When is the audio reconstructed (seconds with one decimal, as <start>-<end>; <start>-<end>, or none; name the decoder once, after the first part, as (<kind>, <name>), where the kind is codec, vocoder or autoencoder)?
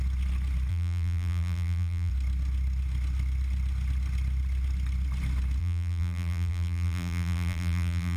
0.7-2.1 (vocoder, BigVGAN v2); 5.6-8.2